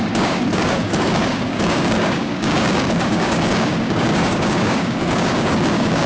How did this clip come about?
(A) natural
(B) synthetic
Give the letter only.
B